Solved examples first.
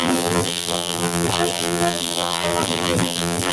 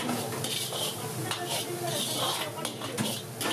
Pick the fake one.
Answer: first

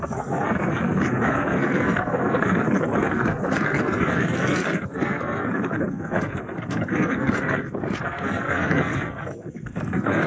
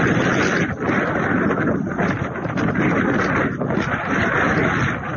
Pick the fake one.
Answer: first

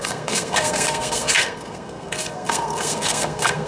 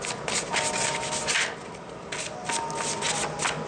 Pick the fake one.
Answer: first